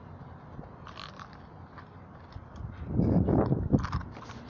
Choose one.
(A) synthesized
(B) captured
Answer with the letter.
B